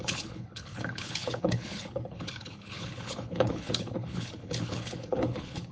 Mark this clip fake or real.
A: fake